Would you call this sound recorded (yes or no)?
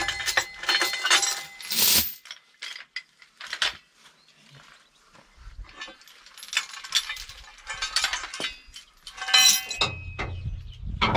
yes